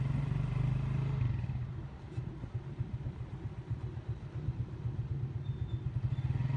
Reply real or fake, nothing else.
real